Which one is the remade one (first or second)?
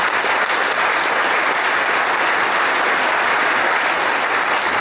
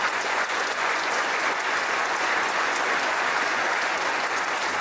second